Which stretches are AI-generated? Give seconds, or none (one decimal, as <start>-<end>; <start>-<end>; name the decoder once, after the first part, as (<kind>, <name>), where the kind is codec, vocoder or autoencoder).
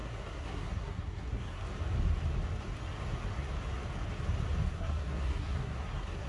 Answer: 0.0-1.6 (codec, SNAC); 4.7-6.3